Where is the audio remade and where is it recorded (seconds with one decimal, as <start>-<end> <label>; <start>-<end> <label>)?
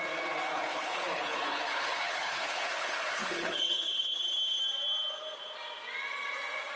0.0-0.5 recorded; 0.5-4.2 remade; 4.2-6.8 recorded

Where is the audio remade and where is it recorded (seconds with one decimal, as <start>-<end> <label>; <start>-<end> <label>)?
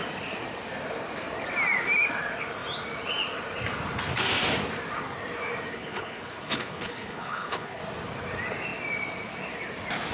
0.0-5.7 recorded; 5.7-7.8 remade; 7.8-10.1 recorded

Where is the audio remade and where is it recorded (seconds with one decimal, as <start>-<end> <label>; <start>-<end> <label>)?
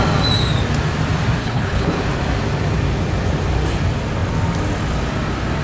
0.0-1.4 recorded; 1.4-2.0 remade; 2.0-5.6 recorded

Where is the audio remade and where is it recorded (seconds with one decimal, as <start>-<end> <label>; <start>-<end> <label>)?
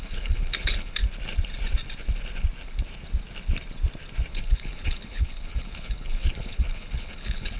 0.0-1.0 remade; 1.0-4.3 recorded; 4.3-7.6 remade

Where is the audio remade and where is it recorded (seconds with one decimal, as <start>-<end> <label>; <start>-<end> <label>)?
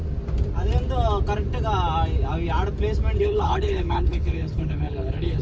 0.0-3.2 recorded; 3.2-5.4 remade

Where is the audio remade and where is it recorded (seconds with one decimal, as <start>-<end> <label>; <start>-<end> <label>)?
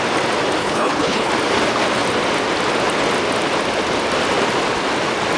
0.0-0.6 recorded; 0.6-1.3 remade; 1.3-5.4 recorded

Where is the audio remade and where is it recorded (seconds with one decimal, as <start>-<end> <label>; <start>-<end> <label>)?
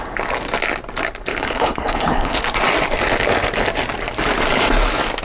0.0-1.3 recorded; 1.3-2.4 remade; 2.4-5.2 recorded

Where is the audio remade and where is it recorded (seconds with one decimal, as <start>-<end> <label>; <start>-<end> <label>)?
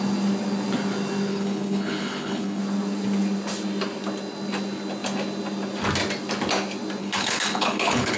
0.0-1.3 recorded; 1.3-2.6 remade; 2.6-7.0 recorded; 7.0-8.2 remade